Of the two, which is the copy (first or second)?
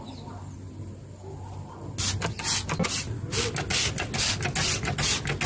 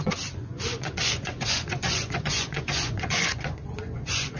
second